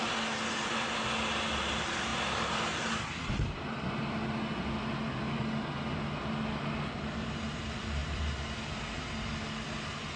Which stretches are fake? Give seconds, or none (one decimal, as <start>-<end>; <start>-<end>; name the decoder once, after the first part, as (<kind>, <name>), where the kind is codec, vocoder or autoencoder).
none